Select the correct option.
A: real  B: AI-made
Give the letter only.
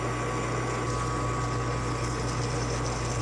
A